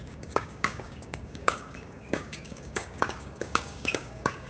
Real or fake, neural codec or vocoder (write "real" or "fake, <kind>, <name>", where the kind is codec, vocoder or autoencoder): fake, codec, DAC